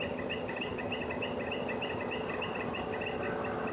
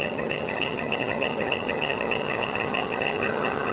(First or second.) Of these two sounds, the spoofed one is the second